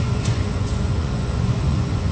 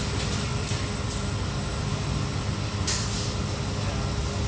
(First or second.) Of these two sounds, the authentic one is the second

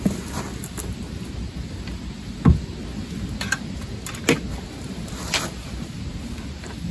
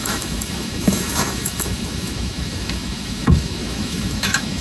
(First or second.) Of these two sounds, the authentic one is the first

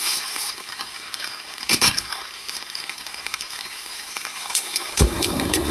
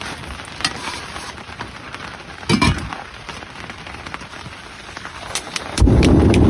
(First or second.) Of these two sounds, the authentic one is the second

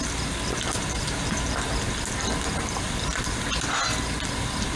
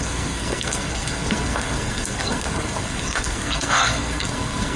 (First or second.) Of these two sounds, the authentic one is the first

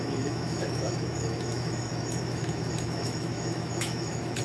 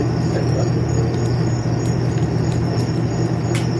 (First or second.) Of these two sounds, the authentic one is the second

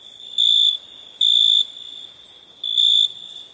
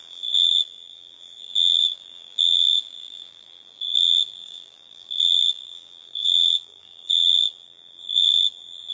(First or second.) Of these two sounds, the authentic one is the first